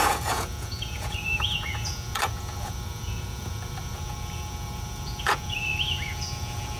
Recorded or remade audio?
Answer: remade